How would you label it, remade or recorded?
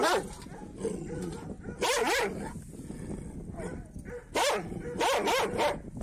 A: recorded